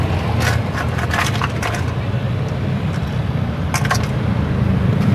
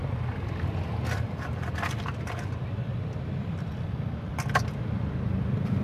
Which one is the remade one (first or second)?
second